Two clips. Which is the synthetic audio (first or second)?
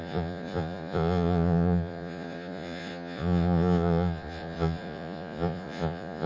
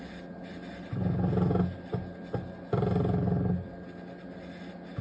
first